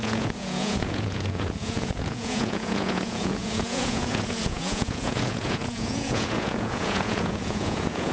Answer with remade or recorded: remade